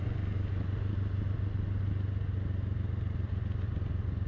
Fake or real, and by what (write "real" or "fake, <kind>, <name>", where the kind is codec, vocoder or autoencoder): real